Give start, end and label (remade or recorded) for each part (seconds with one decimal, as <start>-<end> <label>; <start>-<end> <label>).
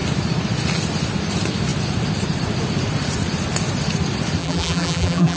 0.0-4.4 recorded; 4.4-5.4 remade